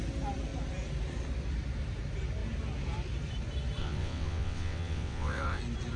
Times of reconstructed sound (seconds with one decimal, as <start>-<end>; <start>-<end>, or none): 3.8-5.6